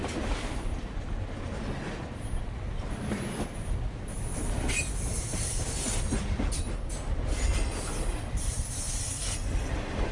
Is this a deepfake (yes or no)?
no